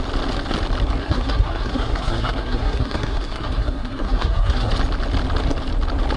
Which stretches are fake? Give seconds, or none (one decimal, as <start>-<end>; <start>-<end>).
1.0-4.7